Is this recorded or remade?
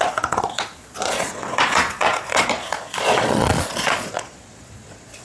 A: remade